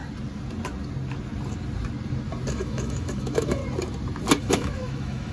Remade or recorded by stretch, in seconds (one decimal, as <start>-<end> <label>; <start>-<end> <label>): 0.0-2.5 recorded; 2.5-3.6 remade; 3.6-4.4 recorded; 4.4-5.3 remade

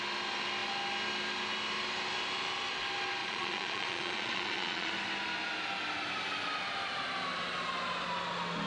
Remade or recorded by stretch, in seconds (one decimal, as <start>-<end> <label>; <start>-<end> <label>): 0.0-3.2 recorded; 3.2-4.9 remade; 4.9-8.7 recorded

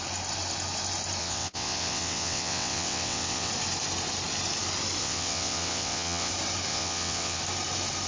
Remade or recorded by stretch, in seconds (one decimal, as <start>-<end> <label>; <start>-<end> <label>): 0.0-1.2 recorded; 1.2-3.5 remade; 3.5-5.0 recorded; 5.0-6.3 remade; 6.3-6.7 recorded; 6.7-7.4 remade; 7.4-8.1 recorded

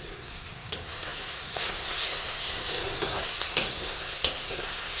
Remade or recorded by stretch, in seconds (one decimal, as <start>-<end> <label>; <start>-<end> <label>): 0.0-5.0 remade

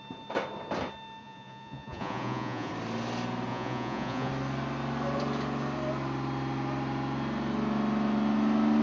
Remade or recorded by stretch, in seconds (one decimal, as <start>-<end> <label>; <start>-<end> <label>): 0.0-1.2 recorded; 1.2-2.7 remade; 2.7-3.5 recorded; 3.5-4.3 remade; 4.3-8.8 recorded

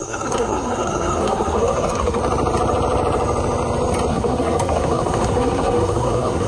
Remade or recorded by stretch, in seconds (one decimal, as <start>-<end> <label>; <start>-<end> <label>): 0.0-2.2 remade; 2.2-4.1 recorded; 4.1-6.5 remade

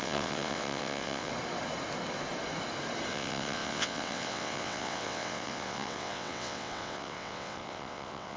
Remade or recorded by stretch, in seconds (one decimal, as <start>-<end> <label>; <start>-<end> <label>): 0.0-1.3 remade; 1.3-3.1 recorded; 3.1-8.4 remade